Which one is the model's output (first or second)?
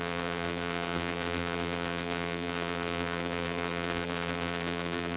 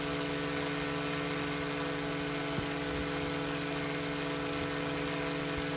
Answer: first